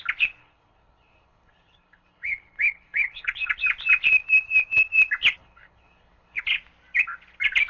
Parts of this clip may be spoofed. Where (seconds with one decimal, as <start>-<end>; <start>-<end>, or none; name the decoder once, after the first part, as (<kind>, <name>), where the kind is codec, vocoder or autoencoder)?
0.4-3.6 (codec, HILCodec); 5.4-6.4